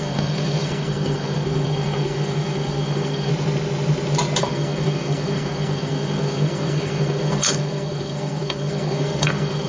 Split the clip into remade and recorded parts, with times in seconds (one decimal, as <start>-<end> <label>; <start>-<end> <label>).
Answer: 0.0-3.3 remade; 3.3-4.4 recorded; 4.4-9.7 remade